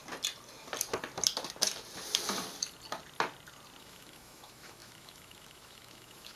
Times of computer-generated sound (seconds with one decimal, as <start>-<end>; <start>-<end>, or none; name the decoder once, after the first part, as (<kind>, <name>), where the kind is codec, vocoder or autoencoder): 3.8-6.4 (autoencoder, DAC-VAE)